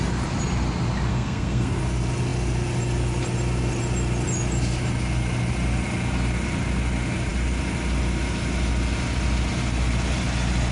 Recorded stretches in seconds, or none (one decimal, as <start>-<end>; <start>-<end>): 0.0-1.1; 1.8-10.7